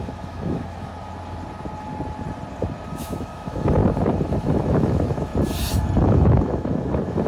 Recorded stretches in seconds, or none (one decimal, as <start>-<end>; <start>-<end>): 0.9-2.9; 3.8-4.3; 5.3-6.0